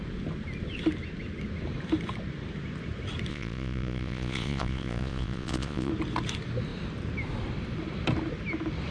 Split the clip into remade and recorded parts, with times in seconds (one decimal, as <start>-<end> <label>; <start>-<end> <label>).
0.0-3.3 recorded; 3.3-5.9 remade; 5.9-8.9 recorded